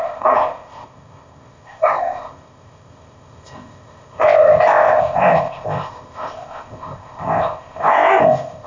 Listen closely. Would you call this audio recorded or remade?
remade